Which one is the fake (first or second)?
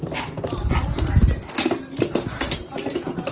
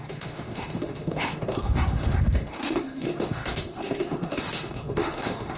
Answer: second